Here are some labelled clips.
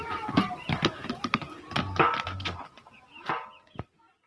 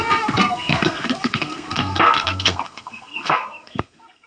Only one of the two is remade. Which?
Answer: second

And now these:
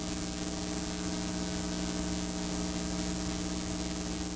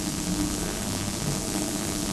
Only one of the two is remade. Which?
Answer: second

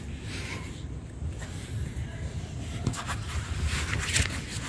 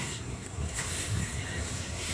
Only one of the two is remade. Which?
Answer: second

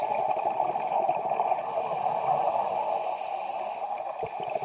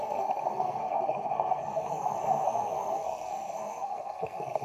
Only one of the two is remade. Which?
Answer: second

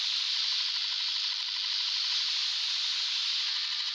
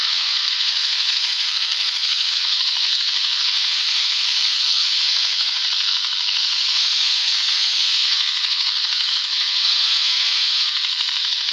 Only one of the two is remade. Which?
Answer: second